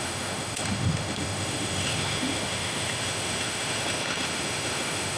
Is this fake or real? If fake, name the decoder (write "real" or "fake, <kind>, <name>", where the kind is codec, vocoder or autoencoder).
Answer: fake, autoencoder, DAC-VAE